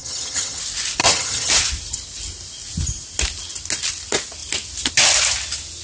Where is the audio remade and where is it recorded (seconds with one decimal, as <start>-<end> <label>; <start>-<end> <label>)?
0.0-0.6 remade; 0.6-1.0 recorded; 1.0-1.5 remade; 1.5-5.8 recorded